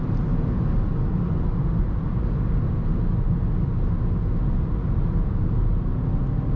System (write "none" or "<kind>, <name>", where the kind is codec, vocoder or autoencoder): none